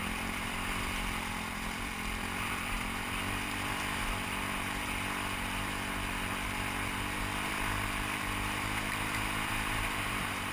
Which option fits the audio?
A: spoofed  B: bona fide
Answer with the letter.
A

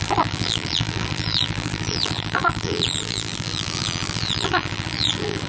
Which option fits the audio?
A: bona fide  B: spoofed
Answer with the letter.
B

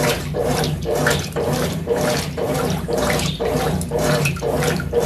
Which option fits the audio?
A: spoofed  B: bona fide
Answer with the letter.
A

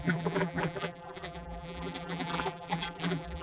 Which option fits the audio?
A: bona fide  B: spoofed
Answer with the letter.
B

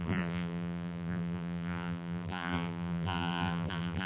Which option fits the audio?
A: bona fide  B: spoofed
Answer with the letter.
B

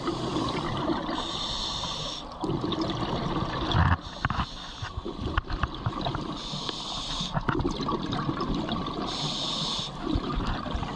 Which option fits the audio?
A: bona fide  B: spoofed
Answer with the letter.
A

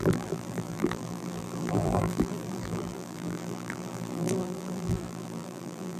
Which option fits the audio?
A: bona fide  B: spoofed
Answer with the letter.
B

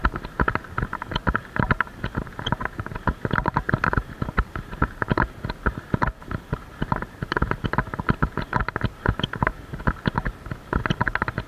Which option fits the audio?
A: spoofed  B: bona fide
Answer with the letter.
B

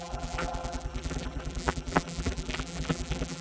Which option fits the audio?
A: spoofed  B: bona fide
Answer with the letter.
A